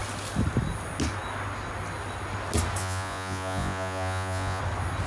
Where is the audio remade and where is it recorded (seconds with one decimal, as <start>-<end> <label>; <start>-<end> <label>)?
0.0-2.8 recorded; 2.8-4.6 remade; 4.6-5.1 recorded